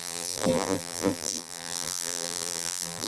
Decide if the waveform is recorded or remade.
remade